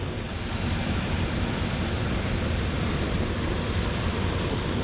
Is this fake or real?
fake